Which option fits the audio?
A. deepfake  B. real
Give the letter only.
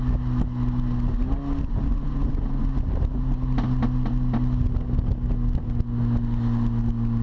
B